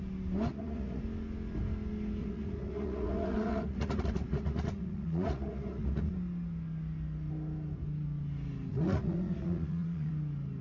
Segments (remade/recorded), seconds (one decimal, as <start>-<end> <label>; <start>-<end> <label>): 0.0-0.5 recorded; 0.5-1.0 remade; 1.0-2.2 recorded; 2.2-6.1 remade; 6.1-8.7 recorded; 8.7-10.1 remade; 10.1-10.6 recorded